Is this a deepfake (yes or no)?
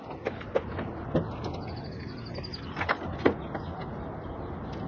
no